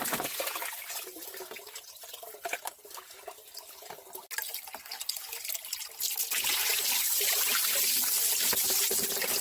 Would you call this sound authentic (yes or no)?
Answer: yes